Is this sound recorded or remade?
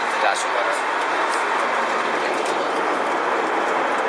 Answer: remade